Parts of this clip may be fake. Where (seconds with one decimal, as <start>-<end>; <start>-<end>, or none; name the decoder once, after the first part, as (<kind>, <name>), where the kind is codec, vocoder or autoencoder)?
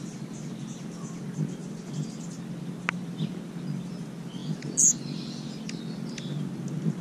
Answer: none